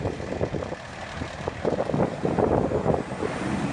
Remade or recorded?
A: recorded